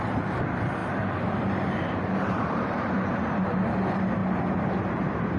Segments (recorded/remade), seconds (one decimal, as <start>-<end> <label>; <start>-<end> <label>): 0.0-4.2 remade; 4.2-4.9 recorded; 4.9-5.4 remade